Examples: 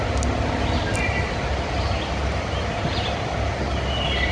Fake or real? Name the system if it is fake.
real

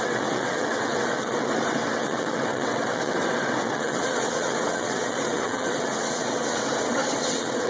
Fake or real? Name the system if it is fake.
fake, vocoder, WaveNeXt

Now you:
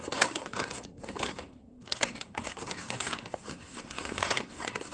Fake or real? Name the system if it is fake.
fake, codec, SNAC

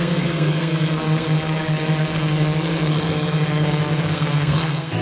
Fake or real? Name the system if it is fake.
fake, codec, SNAC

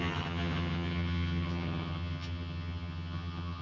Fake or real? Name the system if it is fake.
fake, vocoder, HiFi-GAN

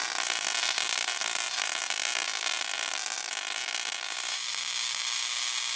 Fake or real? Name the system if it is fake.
real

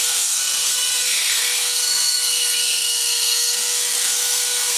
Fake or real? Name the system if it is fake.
fake, codec, SNAC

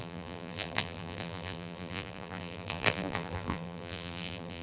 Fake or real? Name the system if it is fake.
fake, vocoder, BigVGAN v2